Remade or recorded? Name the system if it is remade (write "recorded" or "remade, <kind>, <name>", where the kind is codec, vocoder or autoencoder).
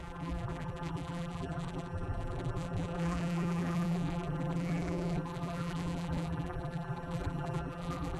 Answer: remade, vocoder, BigVGAN v2